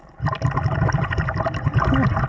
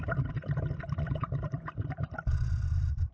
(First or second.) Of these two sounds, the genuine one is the first